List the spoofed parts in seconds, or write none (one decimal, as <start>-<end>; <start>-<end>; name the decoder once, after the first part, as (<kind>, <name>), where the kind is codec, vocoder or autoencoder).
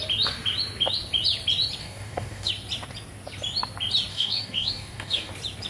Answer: 1.8-2.5 (codec, DAC); 4.1-5.3